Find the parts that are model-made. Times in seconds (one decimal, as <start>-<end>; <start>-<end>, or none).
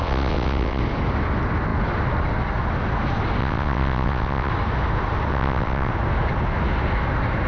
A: 0.0-0.8; 3.4-4.5; 5.3-5.9